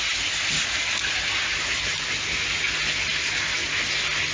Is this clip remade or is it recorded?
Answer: recorded